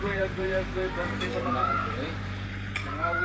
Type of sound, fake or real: fake